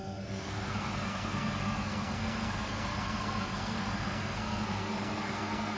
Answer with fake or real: fake